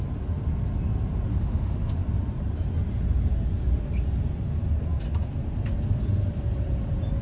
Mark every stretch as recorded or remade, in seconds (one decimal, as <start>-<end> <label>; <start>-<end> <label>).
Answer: 0.0-1.3 recorded; 1.3-1.9 remade; 1.9-7.2 recorded